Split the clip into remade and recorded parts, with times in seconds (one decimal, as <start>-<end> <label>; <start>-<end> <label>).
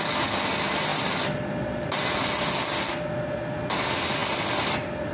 0.0-5.1 recorded